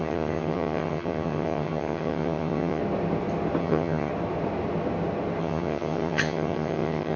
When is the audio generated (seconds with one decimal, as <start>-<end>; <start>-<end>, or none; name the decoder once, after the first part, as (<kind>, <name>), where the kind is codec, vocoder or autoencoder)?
0.0-2.8 (vocoder, HiFi-GAN); 3.6-4.1; 5.4-7.2